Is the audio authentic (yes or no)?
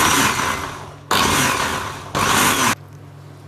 yes